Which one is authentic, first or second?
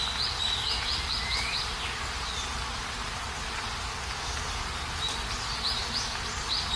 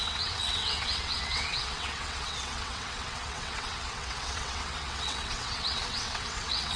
first